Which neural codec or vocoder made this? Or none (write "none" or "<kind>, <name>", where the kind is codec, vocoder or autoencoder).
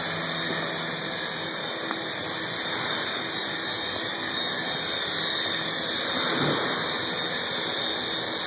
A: none